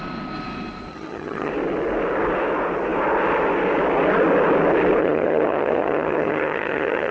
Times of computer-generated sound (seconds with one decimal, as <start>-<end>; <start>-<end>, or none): 0.9-1.5; 5.0-7.1